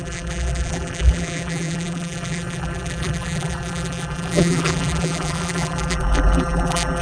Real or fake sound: fake